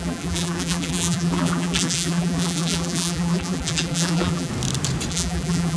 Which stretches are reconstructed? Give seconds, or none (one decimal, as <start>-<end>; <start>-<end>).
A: 0.0-4.5; 5.1-5.8